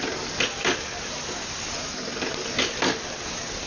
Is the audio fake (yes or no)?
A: no